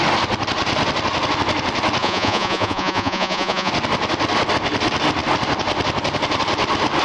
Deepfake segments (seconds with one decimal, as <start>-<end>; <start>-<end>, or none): 2.0-3.7